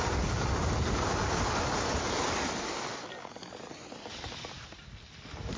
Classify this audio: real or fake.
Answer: real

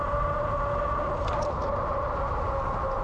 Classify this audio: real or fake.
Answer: real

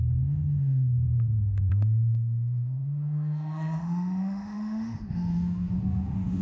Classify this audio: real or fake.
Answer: fake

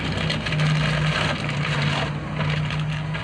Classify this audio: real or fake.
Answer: real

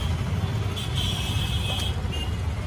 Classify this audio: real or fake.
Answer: real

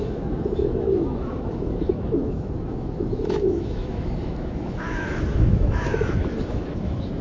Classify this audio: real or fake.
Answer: fake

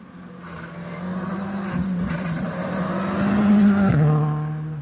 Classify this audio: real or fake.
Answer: real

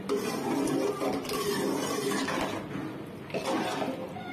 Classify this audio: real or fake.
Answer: real